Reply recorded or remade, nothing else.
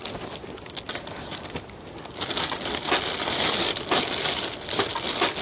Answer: recorded